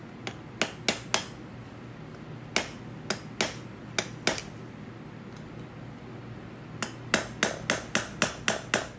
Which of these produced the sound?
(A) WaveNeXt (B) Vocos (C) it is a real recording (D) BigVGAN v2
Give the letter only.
C